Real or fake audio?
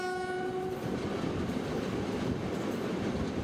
real